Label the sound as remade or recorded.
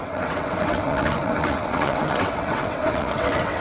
remade